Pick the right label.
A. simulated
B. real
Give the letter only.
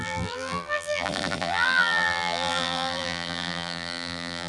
A